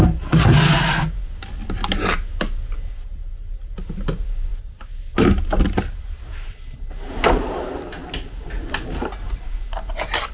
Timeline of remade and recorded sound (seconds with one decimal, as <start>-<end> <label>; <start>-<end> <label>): 0.0-10.3 recorded